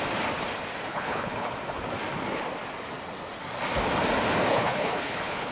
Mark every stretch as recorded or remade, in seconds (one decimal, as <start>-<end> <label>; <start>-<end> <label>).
0.0-0.9 recorded; 0.9-1.5 remade; 1.5-4.5 recorded; 4.5-5.5 remade